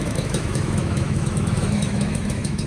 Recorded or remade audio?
remade